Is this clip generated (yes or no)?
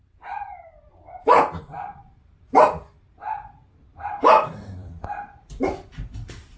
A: yes